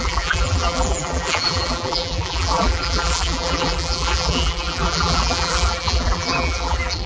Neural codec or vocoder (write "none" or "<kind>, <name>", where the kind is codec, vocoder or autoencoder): vocoder, BigVGAN v2